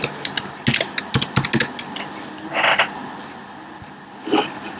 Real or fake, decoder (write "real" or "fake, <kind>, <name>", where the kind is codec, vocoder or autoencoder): real